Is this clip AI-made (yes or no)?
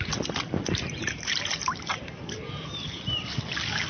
no